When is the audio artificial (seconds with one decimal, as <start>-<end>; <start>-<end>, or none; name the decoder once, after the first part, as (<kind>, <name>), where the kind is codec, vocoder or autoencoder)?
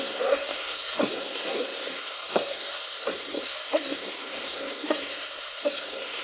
0.0-6.2 (codec, SNAC)